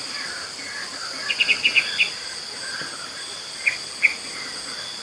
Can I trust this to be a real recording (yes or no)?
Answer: yes